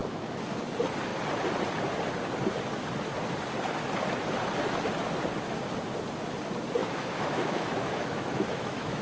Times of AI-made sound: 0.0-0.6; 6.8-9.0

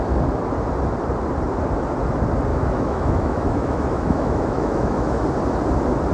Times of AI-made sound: 2.5-5.2